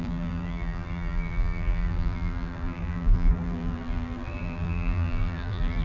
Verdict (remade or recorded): remade